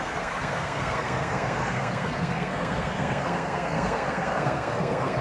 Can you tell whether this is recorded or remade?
remade